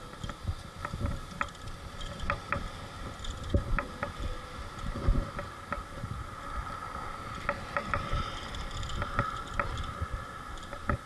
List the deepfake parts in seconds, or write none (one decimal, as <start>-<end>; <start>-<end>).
0.8-1.4